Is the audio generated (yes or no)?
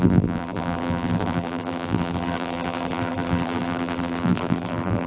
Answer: yes